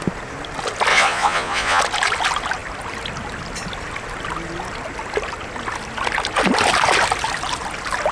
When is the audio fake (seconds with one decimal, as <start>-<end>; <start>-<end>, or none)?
0.9-1.8